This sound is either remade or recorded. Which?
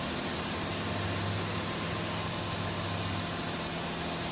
recorded